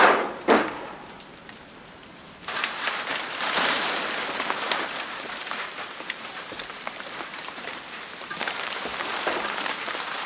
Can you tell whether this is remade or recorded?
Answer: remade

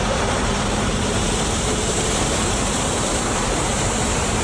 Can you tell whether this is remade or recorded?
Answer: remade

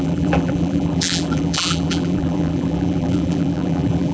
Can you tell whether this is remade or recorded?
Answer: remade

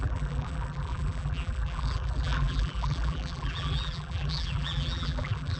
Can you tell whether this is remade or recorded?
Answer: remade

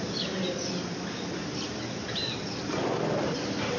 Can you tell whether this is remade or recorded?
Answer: remade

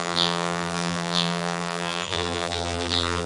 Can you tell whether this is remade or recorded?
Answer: remade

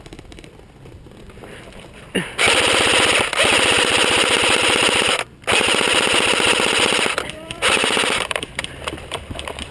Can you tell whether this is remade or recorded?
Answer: remade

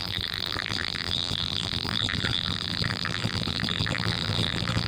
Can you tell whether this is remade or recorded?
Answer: remade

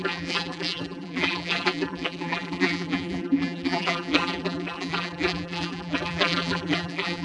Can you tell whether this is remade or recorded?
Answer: remade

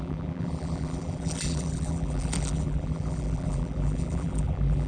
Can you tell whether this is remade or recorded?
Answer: remade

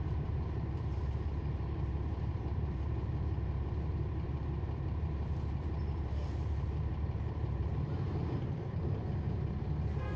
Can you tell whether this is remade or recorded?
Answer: remade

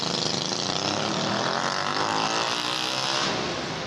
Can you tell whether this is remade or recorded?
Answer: remade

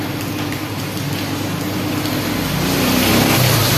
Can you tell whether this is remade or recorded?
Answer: recorded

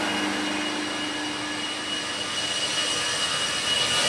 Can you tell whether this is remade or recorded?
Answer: recorded